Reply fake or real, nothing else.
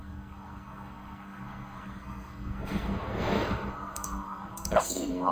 fake